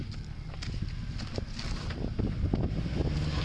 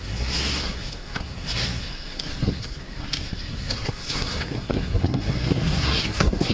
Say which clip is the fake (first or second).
second